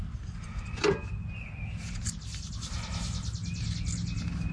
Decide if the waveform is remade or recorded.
recorded